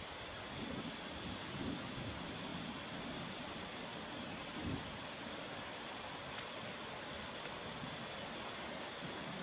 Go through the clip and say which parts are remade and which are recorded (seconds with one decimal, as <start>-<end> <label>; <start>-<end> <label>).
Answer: 0.0-9.4 recorded